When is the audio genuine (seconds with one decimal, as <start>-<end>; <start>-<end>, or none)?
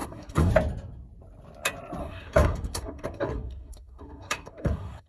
0.5-2.0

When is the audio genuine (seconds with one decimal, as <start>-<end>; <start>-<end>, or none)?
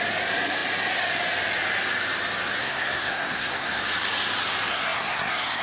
0.0-2.6; 3.8-4.7